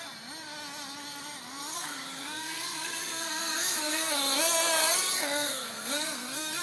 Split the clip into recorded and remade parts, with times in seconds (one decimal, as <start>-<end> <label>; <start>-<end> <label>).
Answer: 0.0-1.7 recorded; 1.7-4.2 remade; 4.2-4.8 recorded; 4.8-6.6 remade